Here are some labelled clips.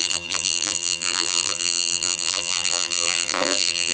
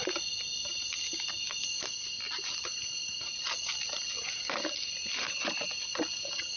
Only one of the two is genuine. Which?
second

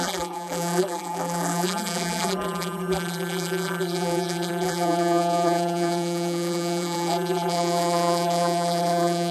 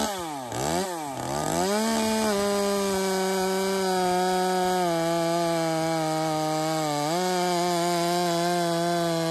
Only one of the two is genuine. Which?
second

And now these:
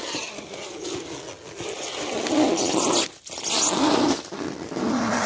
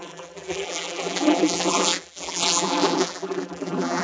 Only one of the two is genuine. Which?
first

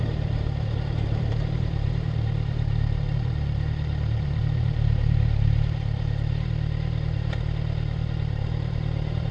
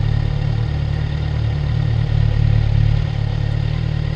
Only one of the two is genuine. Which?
second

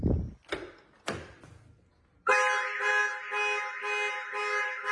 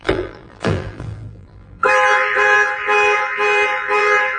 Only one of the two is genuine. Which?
first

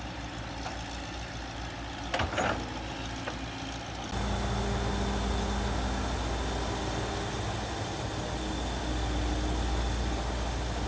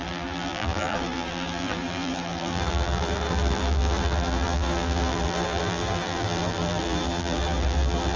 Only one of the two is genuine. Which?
first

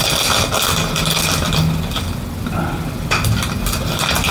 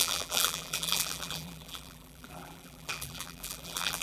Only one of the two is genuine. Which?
first